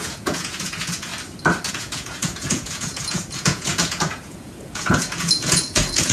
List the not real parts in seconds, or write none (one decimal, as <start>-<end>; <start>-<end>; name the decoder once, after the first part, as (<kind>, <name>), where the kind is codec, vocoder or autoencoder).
0.0-1.1 (vocoder, Vocos); 1.7-6.1

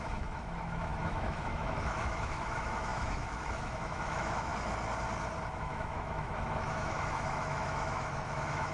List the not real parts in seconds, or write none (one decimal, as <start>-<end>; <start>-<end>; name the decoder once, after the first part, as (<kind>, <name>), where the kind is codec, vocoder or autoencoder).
0.0-4.5 (autoencoder, DAC-VAE); 5.6-8.7

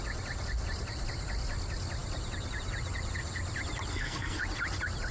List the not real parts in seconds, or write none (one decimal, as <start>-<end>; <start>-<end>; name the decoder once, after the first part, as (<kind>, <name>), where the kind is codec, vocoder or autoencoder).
3.9-4.4 (codec, SNAC)

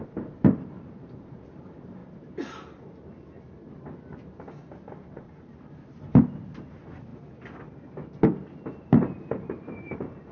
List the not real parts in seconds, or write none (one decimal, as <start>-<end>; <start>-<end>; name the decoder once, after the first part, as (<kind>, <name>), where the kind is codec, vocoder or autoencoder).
0.0-2.0 (vocoder, BigVGAN v2); 5.1-7.1; 8.8-10.3

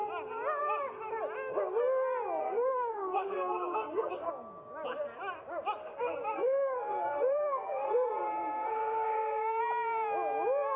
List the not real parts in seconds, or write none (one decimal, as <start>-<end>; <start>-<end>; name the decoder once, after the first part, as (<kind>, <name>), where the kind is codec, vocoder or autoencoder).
2.4-4.3 (codec, SNAC); 5.8-9.6

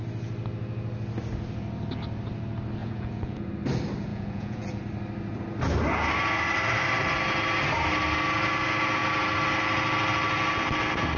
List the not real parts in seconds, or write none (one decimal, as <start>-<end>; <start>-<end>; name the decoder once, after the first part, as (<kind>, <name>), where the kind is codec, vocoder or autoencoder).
2.8-3.5 (vocoder, Vocos); 4.1-4.8

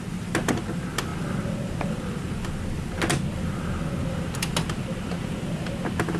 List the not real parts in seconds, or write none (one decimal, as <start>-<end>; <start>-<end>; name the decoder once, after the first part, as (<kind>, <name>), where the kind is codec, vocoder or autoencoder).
none